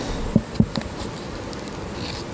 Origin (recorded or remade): recorded